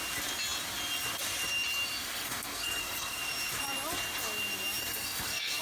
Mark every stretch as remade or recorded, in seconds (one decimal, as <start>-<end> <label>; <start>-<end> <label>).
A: 0.0-2.0 recorded; 2.0-3.2 remade; 3.2-4.8 recorded; 4.8-5.6 remade